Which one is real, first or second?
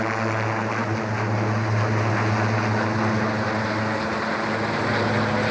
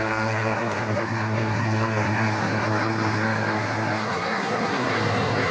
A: first